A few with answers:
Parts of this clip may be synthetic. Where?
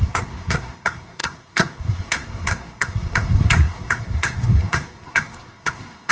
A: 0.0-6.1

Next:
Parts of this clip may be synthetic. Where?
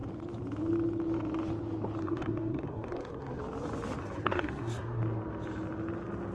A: 2.0-3.4; 4.0-5.0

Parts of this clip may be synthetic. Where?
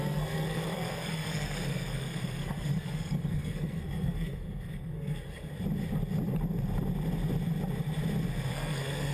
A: 0.0-5.5; 8.5-9.1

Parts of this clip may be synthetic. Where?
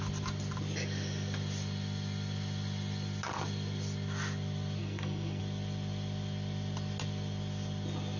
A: 4.8-5.4